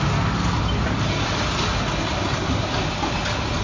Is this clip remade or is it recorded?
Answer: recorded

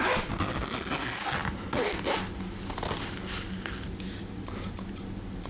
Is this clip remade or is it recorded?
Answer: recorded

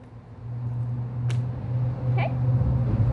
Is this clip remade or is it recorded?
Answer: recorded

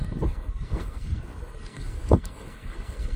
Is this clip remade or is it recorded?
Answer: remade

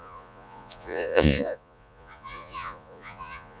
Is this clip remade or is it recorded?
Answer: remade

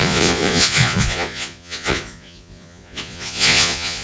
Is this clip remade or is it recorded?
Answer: remade